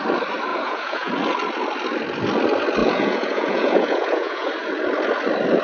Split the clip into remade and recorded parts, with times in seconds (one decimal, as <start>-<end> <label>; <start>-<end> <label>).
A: 0.0-0.5 recorded; 0.5-1.1 remade; 1.1-2.8 recorded; 2.8-4.5 remade; 4.5-5.6 recorded